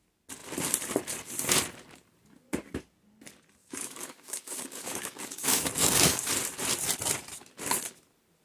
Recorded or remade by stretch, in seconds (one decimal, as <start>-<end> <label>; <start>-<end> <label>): 0.0-3.6 recorded; 3.6-6.3 remade; 6.3-8.4 recorded